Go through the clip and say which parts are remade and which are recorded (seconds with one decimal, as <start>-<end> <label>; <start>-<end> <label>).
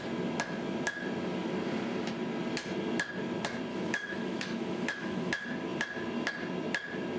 0.0-3.7 recorded; 3.7-5.3 remade; 5.3-7.2 recorded